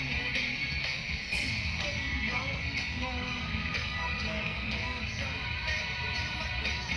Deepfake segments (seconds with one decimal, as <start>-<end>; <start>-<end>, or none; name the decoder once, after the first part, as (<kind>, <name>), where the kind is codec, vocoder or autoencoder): 0.8-5.0 (codec, SNAC)